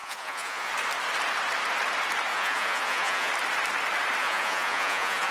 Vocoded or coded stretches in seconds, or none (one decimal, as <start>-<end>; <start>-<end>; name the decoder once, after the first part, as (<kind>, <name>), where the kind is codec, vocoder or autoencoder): 0.0-0.7 (vocoder, Vocos); 2.3-3.3; 4.2-5.3